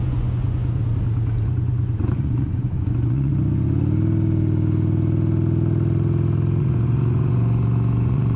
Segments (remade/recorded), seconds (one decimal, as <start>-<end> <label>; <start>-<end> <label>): 0.0-0.8 remade; 0.8-1.5 recorded; 1.5-3.3 remade; 3.3-6.6 recorded; 6.6-8.4 remade